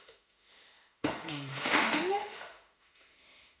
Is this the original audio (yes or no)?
no